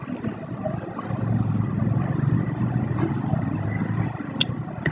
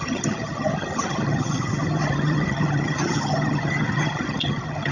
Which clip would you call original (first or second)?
first